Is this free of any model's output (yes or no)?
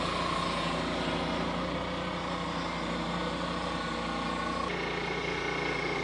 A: yes